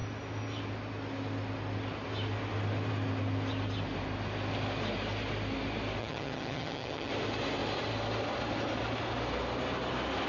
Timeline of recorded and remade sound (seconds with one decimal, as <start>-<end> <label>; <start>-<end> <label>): 0.0-6.0 recorded; 6.0-7.1 remade; 7.1-10.3 recorded